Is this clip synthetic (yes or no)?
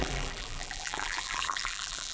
yes